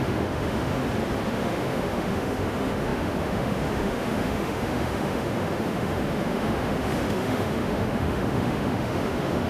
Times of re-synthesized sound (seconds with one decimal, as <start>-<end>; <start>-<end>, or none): 0.0-0.8; 1.3-9.5